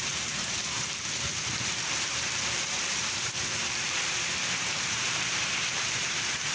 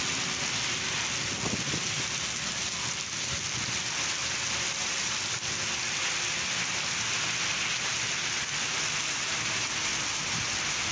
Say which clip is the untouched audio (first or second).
second